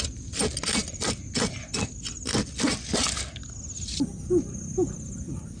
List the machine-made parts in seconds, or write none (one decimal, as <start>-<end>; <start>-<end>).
none